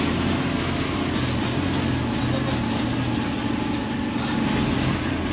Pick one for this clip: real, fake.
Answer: real